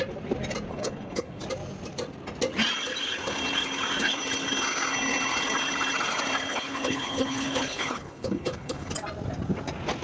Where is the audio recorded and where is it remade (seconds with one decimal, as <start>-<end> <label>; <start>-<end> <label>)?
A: 0.0-0.7 recorded; 0.7-1.4 remade; 1.4-6.5 recorded; 6.5-8.9 remade; 8.9-10.0 recorded